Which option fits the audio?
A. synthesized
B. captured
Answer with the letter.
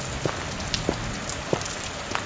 B